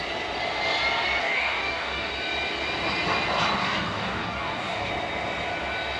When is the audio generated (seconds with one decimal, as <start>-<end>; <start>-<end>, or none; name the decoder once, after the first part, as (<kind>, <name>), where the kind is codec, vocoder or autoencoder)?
1.2-2.1 (codec, DAC); 3.6-4.9